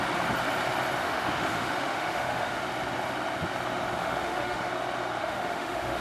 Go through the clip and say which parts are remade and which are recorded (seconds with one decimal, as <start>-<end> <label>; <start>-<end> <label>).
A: 0.0-1.0 recorded; 1.0-2.6 remade; 2.6-4.0 recorded; 4.0-4.7 remade; 4.7-5.2 recorded; 5.2-6.0 remade

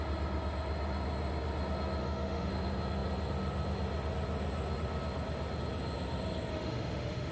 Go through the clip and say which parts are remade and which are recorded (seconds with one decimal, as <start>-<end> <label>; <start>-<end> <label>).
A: 0.0-2.0 recorded; 2.0-2.5 remade; 2.5-6.5 recorded; 6.5-7.3 remade

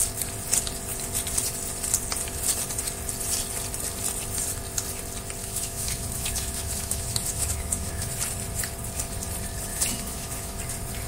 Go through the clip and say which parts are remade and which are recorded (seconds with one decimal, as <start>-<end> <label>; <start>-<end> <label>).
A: 0.0-5.4 recorded; 5.4-8.1 remade; 8.1-9.7 recorded; 9.7-10.6 remade; 10.6-11.1 recorded

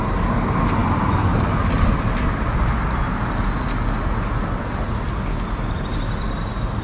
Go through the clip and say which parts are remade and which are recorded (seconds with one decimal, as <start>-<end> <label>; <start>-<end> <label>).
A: 0.0-6.8 recorded

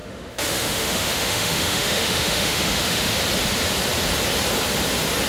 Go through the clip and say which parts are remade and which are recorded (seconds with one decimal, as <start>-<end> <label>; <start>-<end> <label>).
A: 0.0-3.2 remade; 3.2-5.3 recorded

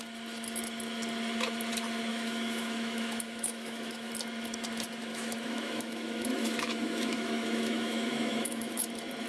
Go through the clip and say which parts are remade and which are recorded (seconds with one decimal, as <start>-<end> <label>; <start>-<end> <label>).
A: 0.0-2.1 recorded; 2.1-4.1 remade; 4.1-5.1 recorded; 5.1-8.9 remade; 8.9-9.3 recorded

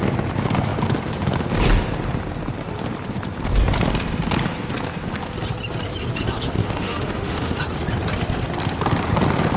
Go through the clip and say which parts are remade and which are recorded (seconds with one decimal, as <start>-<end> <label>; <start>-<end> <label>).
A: 0.0-6.6 recorded; 6.6-7.6 remade; 7.6-9.6 recorded

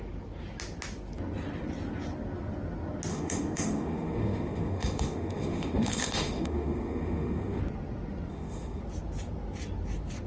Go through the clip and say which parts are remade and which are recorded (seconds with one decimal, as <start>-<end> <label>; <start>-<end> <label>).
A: 0.0-3.1 recorded; 3.1-7.6 remade; 7.6-8.3 recorded; 8.3-8.8 remade; 8.8-10.3 recorded